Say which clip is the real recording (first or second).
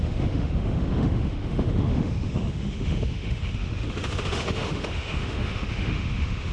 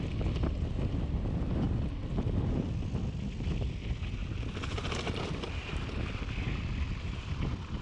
second